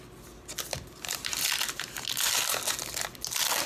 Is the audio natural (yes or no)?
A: yes